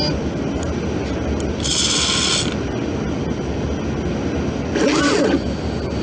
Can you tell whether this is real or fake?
real